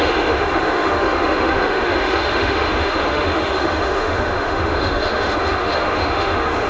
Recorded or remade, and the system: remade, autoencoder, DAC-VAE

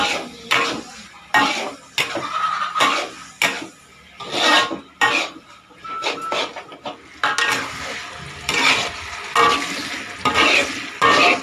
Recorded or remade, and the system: recorded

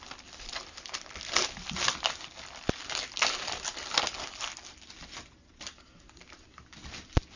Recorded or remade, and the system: recorded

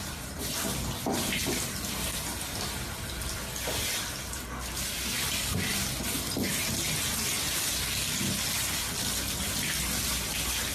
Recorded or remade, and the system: recorded